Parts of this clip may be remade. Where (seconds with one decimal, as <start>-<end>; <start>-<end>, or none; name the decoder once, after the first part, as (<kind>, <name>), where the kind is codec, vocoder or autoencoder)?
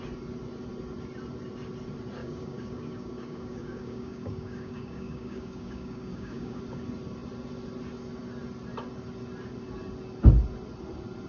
2.2-6.6 (codec, DAC)